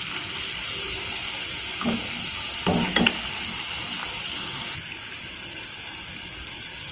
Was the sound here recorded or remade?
recorded